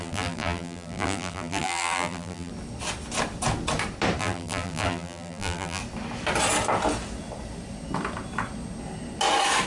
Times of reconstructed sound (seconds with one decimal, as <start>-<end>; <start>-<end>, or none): 0.0-2.5; 4.2-5.8